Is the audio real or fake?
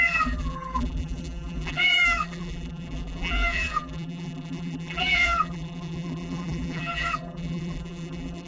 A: fake